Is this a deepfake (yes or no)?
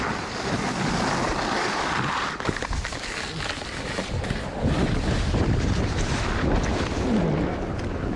no